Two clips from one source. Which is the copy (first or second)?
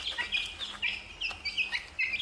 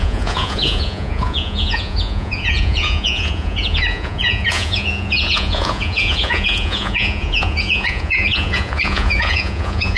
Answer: second